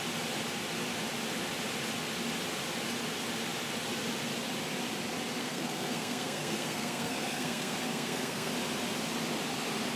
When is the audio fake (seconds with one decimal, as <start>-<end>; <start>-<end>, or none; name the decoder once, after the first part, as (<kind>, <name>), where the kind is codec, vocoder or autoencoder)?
5.4-8.5 (codec, SNAC)